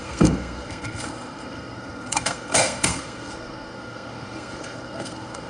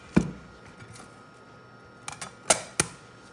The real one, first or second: second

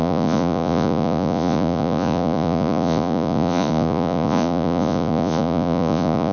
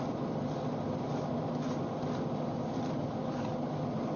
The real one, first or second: second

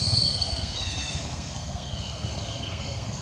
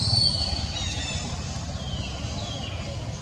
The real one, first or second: second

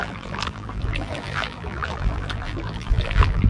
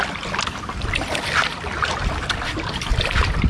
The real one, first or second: second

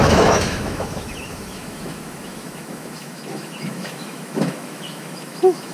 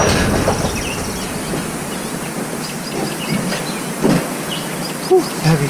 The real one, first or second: second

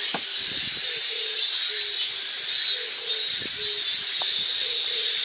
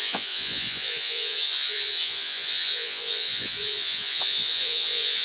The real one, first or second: first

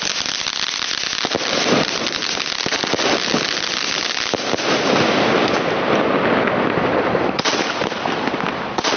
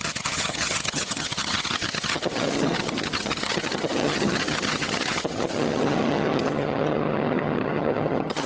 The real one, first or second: first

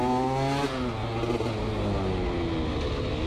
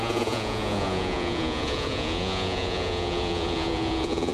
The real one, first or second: first